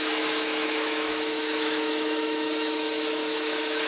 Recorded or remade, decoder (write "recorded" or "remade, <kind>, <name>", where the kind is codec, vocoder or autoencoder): remade, autoencoder, DAC-VAE